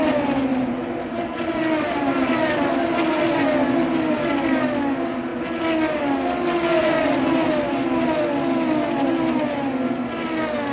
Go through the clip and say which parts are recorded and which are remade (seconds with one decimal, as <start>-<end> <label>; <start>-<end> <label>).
0.0-0.5 recorded; 0.5-2.8 remade; 2.8-6.8 recorded; 6.8-7.5 remade; 7.5-10.7 recorded